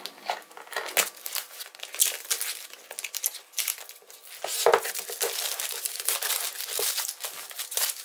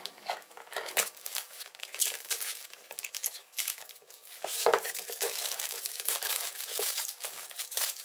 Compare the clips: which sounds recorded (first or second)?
first